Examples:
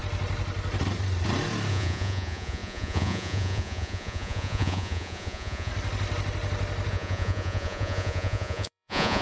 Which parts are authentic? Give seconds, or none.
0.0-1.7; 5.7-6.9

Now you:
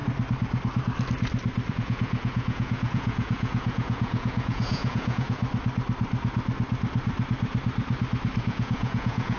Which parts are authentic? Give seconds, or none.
0.0-1.7; 5.4-8.4